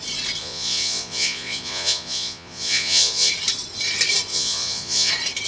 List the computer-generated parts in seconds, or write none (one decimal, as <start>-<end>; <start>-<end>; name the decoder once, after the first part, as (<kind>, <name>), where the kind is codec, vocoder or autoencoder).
0.4-3.3 (vocoder, Vocos); 4.3-5.1